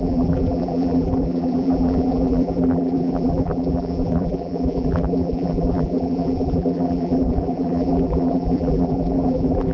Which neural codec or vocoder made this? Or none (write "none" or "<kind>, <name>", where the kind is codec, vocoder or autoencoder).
vocoder, BigVGAN v2